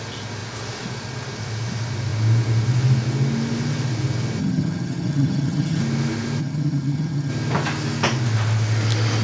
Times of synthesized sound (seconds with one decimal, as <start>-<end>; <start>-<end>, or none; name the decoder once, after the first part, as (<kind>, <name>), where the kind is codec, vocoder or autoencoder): 4.4-5.8 (vocoder, HiFi-GAN); 6.4-7.3